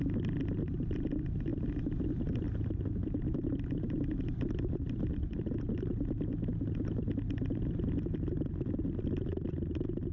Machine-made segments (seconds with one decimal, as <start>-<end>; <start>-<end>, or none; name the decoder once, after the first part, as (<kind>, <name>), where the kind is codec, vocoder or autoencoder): none